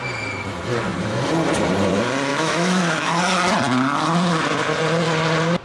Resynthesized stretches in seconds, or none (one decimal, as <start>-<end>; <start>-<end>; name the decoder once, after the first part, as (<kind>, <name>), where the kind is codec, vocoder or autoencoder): 2.3-3.1 (autoencoder, DAC-VAE)